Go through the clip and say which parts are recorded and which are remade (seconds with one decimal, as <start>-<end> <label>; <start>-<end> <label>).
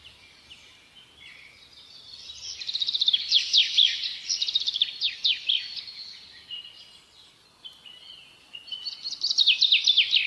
0.0-10.3 recorded